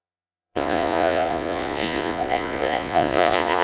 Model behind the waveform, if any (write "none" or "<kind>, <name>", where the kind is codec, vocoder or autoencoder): vocoder, Vocos